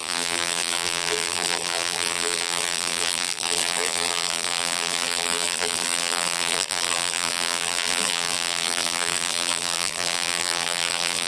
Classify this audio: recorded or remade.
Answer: remade